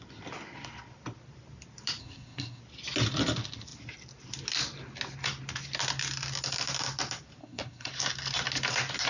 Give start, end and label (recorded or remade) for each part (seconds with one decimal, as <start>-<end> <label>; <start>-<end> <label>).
0.0-2.0 recorded; 2.0-2.6 remade; 2.6-7.4 recorded; 7.4-7.9 remade; 7.9-9.1 recorded